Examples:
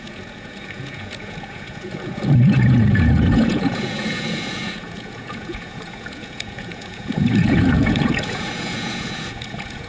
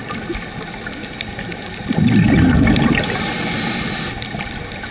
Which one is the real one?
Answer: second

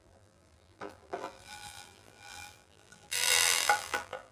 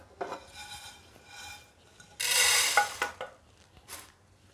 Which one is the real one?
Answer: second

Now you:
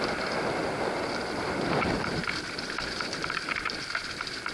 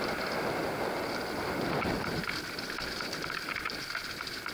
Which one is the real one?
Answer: second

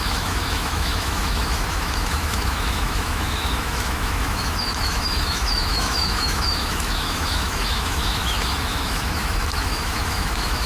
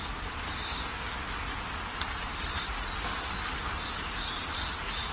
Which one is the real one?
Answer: second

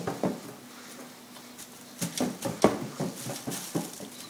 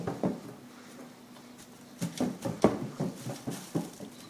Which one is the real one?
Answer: first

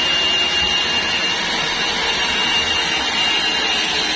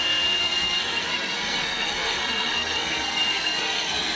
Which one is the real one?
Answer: first